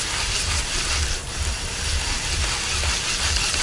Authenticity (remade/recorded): recorded